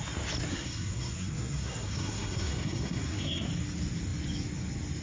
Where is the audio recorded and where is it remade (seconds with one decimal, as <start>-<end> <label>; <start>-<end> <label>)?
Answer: 0.0-0.5 recorded; 0.5-3.5 remade; 3.5-5.0 recorded